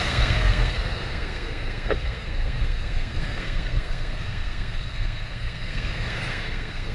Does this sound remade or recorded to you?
remade